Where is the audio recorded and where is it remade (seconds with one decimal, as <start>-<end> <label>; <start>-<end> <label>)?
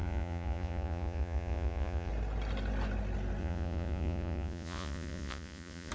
0.0-2.1 remade; 2.1-3.4 recorded; 3.4-5.9 remade